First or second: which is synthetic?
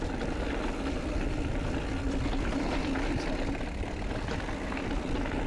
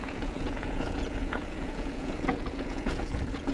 second